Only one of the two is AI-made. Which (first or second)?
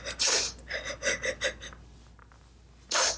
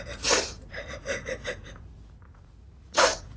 second